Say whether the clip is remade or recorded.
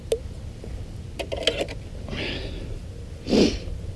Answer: recorded